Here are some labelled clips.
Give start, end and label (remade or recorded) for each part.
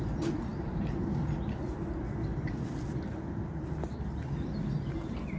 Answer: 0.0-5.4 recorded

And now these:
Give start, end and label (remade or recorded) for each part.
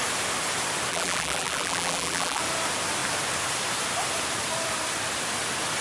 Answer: 0.0-0.9 recorded; 0.9-2.4 remade; 2.4-5.8 recorded